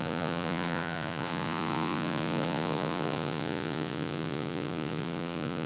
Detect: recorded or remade remade